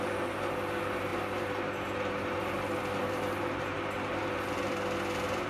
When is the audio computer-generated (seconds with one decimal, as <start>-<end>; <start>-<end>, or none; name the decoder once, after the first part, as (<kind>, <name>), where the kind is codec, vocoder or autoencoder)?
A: none

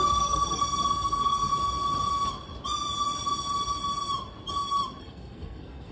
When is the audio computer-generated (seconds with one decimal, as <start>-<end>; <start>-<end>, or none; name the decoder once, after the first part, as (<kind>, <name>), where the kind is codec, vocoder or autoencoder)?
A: 0.0-1.5 (codec, SNAC); 5.0-5.9

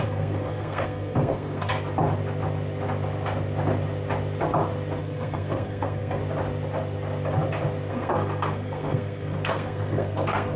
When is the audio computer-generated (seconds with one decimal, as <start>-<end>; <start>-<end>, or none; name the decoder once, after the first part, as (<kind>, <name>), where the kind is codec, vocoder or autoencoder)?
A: 0.0-1.7 (codec, SNAC); 5.0-6.2; 7.9-10.6

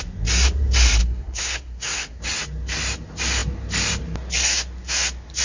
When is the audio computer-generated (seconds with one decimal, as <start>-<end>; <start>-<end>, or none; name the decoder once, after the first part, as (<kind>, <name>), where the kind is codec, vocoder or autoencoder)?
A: 1.0-2.2 (codec, SNAC)

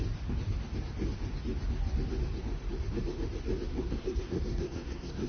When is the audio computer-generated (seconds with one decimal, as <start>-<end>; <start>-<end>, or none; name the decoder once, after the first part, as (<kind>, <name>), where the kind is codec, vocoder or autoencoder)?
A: 3.7-5.3 (codec, SNAC)